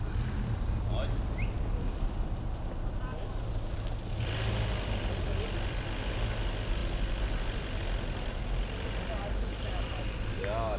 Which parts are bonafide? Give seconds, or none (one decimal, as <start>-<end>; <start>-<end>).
0.0-10.8